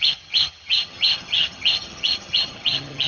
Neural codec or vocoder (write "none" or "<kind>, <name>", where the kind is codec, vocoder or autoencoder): vocoder, HiFi-GAN